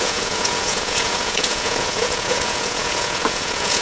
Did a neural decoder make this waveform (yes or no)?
yes